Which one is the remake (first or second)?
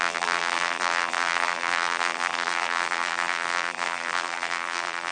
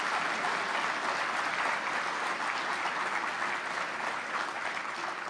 first